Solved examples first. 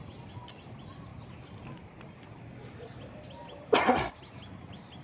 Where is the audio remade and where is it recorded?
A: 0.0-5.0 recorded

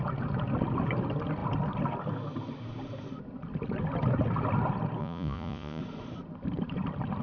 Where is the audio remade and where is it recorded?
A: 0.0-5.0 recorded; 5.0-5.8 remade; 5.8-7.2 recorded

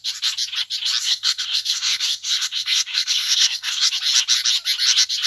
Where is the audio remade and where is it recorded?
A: 0.0-1.0 recorded; 1.0-3.9 remade; 3.9-5.3 recorded